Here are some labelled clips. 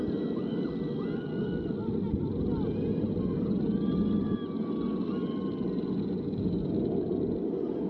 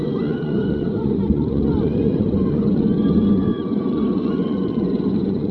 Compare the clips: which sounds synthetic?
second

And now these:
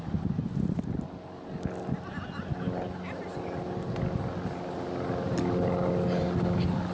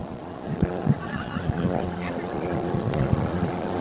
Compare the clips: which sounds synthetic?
second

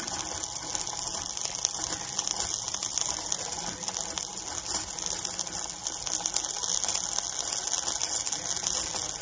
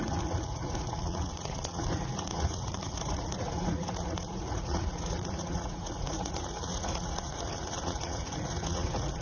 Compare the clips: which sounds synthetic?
second